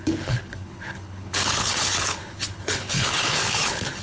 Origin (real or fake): fake